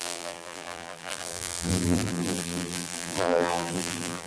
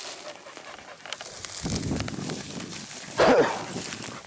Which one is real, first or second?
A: second